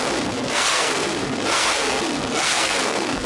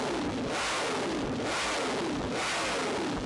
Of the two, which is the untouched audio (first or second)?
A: second